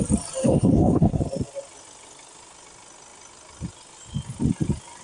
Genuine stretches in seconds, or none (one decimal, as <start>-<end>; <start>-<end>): 0.0-0.4; 1.2-5.0

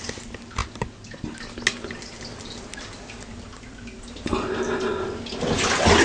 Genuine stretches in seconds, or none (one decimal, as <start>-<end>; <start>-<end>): 0.0-6.0

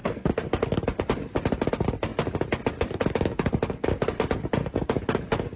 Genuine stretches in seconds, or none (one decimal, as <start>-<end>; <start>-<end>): 0.5-5.6

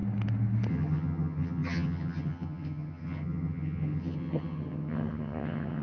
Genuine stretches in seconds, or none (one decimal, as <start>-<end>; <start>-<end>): 0.0-0.7

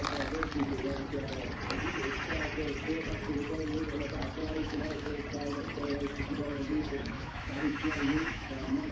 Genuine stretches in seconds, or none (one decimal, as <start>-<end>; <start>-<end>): 0.0-4.4; 5.2-6.5